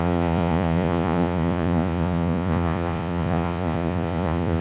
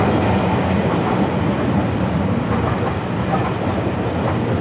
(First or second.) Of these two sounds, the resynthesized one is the first